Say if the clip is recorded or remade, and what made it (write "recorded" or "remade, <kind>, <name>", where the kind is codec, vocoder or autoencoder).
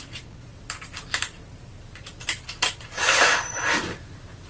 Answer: remade, vocoder, BigVGAN v2